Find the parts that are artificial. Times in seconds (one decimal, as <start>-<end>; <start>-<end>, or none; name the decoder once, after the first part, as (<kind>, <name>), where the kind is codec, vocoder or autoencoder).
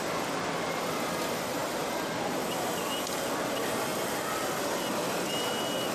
0.0-3.9 (vocoder, BigVGAN v2); 5.1-5.9